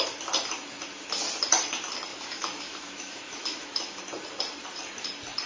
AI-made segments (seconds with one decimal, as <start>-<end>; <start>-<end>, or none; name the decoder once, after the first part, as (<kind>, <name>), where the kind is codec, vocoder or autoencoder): 2.1-4.0 (autoencoder, DAC-VAE)